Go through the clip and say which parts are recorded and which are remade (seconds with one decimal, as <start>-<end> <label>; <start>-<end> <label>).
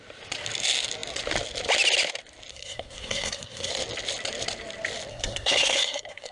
0.0-2.5 recorded; 2.5-3.7 remade; 3.7-5.1 recorded; 5.1-6.3 remade